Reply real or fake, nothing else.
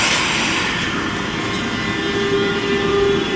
real